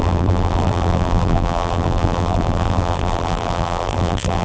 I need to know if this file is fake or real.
fake